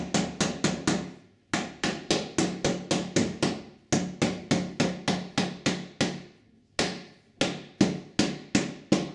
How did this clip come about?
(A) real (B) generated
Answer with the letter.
A